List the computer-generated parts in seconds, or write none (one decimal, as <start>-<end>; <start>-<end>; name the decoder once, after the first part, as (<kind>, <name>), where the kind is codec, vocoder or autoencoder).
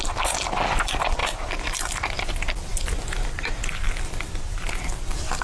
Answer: none